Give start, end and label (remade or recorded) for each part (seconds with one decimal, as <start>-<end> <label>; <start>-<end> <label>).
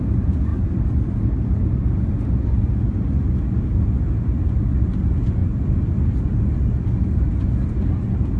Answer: 0.0-8.4 recorded